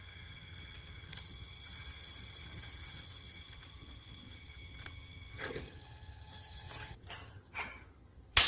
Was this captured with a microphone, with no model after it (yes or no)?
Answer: no